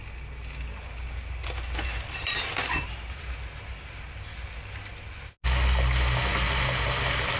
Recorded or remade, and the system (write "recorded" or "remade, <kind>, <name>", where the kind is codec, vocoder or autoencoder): recorded